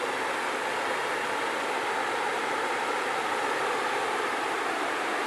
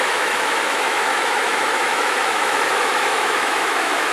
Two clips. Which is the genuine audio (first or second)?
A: first